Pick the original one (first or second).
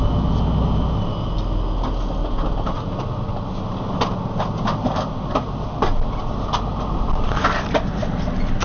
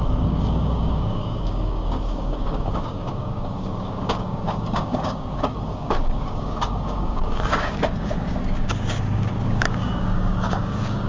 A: first